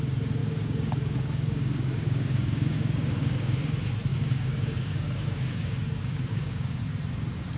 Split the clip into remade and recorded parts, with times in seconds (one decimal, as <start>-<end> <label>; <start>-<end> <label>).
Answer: 0.0-0.4 recorded; 0.4-3.6 remade; 3.6-4.1 recorded; 4.1-6.8 remade; 6.8-7.6 recorded